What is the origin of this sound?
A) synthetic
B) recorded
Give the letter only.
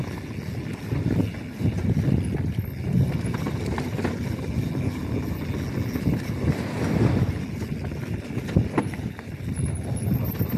B